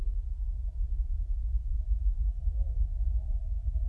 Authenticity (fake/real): real